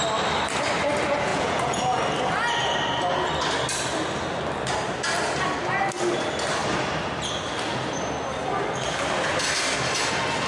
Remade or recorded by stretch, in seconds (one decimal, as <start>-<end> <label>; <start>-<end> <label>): 0.0-1.3 recorded; 1.3-2.0 remade; 2.0-10.5 recorded